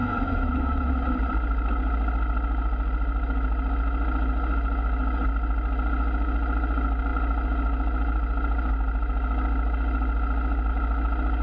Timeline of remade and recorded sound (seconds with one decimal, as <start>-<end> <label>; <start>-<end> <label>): 0.0-0.9 remade; 0.9-11.4 recorded